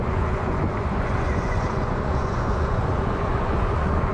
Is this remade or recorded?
remade